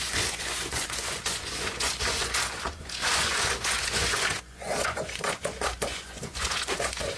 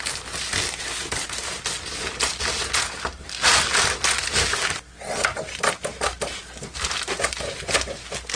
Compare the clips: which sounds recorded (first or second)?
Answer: second